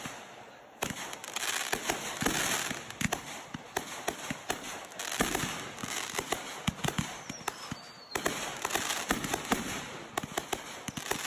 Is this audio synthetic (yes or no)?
no